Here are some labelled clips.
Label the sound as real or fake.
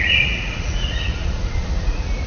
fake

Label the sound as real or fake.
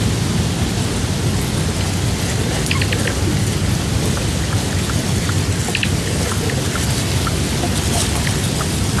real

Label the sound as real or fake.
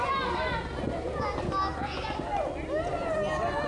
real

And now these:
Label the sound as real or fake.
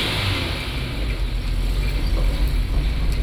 real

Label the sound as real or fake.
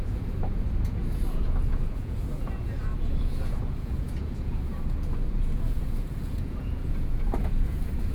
fake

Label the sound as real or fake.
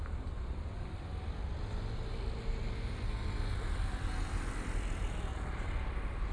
real